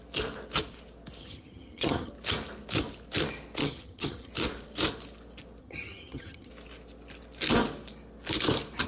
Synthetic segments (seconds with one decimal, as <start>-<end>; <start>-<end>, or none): 1.2-2.1; 3.6-4.3; 5.6-6.5